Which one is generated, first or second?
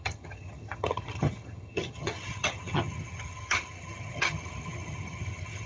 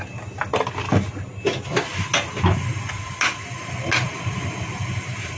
first